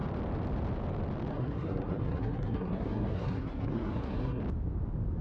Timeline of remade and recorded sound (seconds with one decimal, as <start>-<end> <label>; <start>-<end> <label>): 0.0-1.3 recorded; 1.3-4.4 remade; 4.4-5.2 recorded